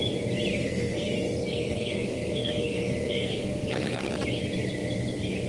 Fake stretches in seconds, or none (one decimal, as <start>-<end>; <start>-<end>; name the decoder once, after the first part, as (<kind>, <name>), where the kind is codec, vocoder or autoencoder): 0.5-1.1 (codec, SNAC); 1.5-4.1

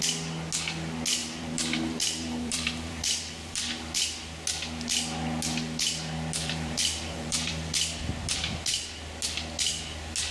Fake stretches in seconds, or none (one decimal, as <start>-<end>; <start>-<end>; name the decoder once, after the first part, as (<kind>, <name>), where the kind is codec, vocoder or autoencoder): 1.2-3.7 (vocoder, BigVGAN v2); 6.4-7.7

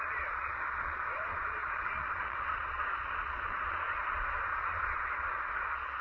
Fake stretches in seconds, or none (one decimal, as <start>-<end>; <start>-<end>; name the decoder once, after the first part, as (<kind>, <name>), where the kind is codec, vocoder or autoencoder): 0.0-6.0 (vocoder, Vocos)

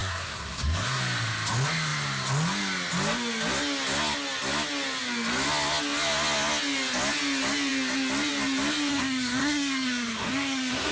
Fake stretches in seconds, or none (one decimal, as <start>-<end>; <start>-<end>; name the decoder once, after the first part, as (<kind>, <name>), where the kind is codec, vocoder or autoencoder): 0.0-1.0 (codec, SNAC); 8.9-10.9

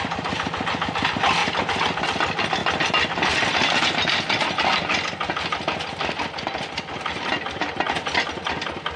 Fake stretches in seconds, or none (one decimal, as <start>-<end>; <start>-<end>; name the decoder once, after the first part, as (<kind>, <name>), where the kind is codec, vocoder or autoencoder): none

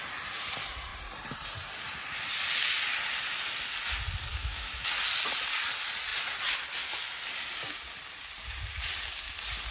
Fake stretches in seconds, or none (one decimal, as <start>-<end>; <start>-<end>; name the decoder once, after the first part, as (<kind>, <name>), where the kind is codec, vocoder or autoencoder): 4.3-4.9 (autoencoder, DAC-VAE)

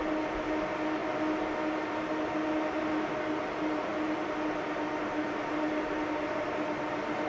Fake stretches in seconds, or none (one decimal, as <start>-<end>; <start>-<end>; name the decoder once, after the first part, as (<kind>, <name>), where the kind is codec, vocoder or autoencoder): none

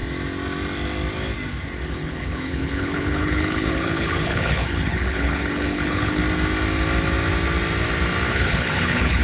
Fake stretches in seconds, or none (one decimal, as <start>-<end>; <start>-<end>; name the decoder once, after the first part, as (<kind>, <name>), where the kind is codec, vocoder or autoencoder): 1.9-6.2 (codec, HILCodec); 8.3-9.2